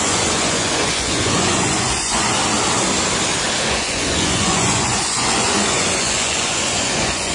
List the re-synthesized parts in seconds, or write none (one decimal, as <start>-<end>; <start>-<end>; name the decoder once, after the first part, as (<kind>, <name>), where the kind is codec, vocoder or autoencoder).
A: 0.0-2.4 (vocoder, Vocos); 3.6-7.3